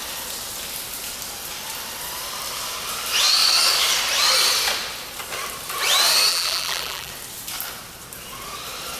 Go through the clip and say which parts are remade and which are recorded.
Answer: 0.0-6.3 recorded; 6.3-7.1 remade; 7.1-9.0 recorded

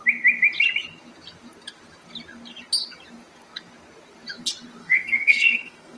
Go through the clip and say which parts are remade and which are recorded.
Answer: 0.0-4.8 recorded; 4.8-6.0 remade

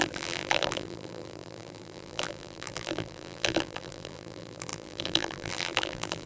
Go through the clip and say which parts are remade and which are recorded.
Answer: 0.0-6.3 remade

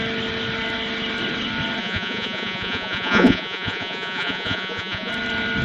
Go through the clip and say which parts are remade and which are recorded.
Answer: 0.0-1.8 recorded; 1.8-5.1 remade; 5.1-5.6 recorded

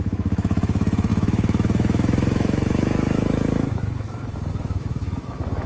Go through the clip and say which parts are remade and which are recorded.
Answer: 0.0-5.7 remade

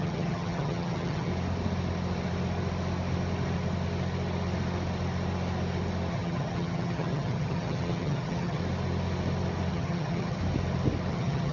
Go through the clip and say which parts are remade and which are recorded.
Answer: 0.0-1.3 remade; 1.3-6.1 recorded; 6.1-8.6 remade; 8.6-9.7 recorded; 9.7-10.4 remade; 10.4-11.1 recorded; 11.1-11.5 remade

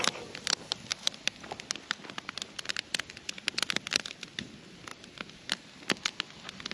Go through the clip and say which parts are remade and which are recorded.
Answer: 0.0-4.9 recorded; 4.9-5.5 remade; 5.5-6.7 recorded